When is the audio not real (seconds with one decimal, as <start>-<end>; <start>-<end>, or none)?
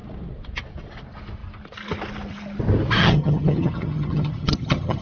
3.0-5.0